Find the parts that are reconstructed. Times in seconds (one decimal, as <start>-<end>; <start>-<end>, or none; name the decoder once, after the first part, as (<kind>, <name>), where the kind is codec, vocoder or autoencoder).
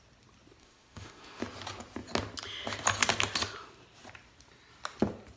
0.6-1.4 (autoencoder, DAC-VAE)